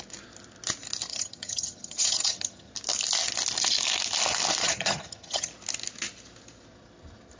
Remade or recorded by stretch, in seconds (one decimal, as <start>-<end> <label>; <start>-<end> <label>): 0.0-1.1 recorded; 1.1-2.7 remade; 2.7-4.6 recorded; 4.6-5.5 remade; 5.5-7.4 recorded

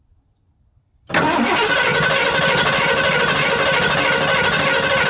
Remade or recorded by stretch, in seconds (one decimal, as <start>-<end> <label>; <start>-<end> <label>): 0.0-5.1 recorded

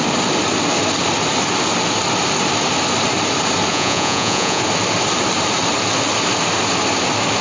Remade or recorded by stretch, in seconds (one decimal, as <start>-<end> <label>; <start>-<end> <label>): 0.0-3.7 recorded; 3.7-4.6 remade; 4.6-7.4 recorded

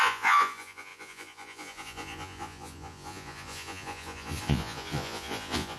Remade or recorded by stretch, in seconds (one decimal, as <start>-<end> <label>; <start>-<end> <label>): 0.0-5.8 remade

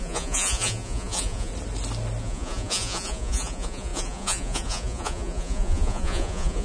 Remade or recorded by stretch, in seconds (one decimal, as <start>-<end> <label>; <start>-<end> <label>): 0.0-1.5 remade; 1.5-2.2 recorded; 2.2-6.6 remade

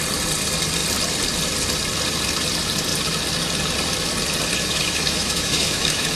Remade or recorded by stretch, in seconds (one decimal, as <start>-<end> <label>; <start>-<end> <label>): 0.0-4.6 recorded; 4.6-6.1 remade

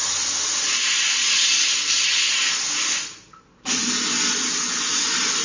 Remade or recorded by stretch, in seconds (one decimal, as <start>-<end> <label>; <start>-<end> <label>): 0.0-5.4 recorded

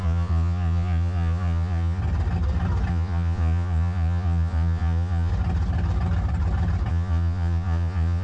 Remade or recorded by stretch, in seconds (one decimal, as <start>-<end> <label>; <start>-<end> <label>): 0.0-2.0 remade; 2.0-2.9 recorded; 2.9-5.3 remade; 5.3-6.9 recorded; 6.9-8.2 remade